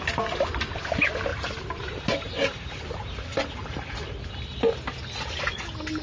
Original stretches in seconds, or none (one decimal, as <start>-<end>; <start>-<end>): 0.0-1.3; 4.3-6.0